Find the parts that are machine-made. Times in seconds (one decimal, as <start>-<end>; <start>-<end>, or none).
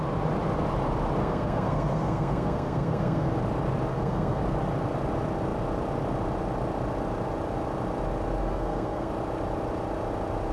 1.2-3.3; 3.9-4.4; 8.4-9.1